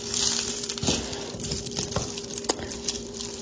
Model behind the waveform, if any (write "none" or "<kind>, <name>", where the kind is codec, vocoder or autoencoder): vocoder, BigVGAN v2